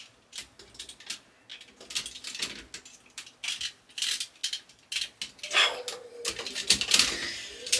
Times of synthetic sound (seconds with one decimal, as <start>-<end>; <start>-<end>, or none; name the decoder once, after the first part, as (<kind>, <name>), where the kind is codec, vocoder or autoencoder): none